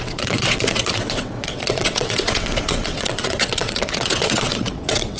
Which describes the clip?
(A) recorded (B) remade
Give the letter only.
B